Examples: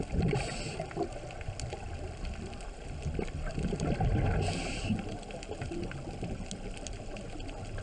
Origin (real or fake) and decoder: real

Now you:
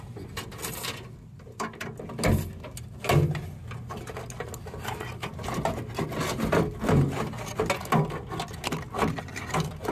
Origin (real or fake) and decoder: real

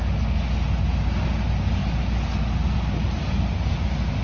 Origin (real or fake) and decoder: real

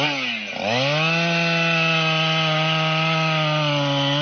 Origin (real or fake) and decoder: real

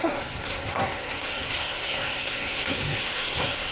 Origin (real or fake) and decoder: fake, codec, SNAC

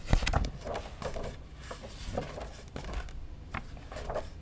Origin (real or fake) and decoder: real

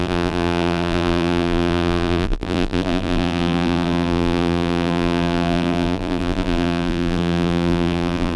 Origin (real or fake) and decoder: fake, vocoder, BigVGAN v2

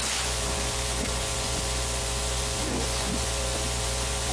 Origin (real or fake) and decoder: fake, vocoder, Vocos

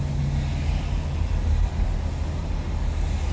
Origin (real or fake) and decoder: real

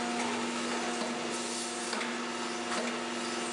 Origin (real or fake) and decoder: real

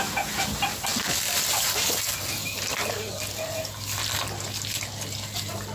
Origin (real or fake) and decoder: real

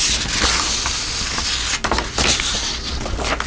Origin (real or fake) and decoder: real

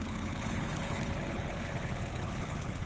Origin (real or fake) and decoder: fake, codec, HILCodec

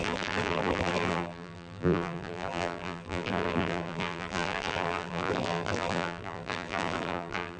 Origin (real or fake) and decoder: fake, vocoder, BigVGAN v2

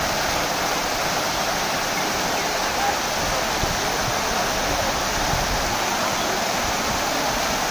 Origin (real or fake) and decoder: real